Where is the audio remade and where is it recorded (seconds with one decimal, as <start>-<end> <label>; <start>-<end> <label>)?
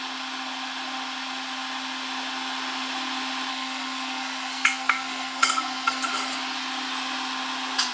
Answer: 0.0-3.5 recorded; 3.5-6.1 remade; 6.1-7.9 recorded